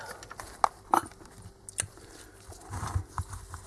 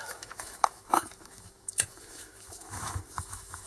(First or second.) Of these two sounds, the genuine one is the first